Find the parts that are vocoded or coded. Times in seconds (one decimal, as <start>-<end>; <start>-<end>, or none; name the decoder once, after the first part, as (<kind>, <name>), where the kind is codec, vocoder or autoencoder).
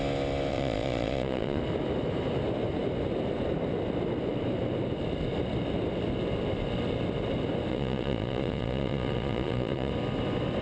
0.5-1.6 (vocoder, Vocos); 7.7-9.9